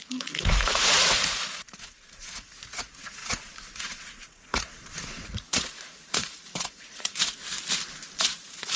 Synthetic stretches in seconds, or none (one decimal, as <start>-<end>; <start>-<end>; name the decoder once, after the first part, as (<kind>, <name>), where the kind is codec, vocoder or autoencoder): 0.0-7.4 (vocoder, Vocos); 8.2-8.8